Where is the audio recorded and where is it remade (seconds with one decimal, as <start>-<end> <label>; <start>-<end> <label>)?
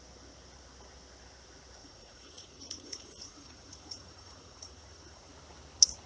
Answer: 0.0-1.8 recorded; 1.8-5.3 remade; 5.3-6.1 recorded